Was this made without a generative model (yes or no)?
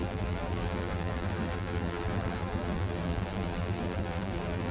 no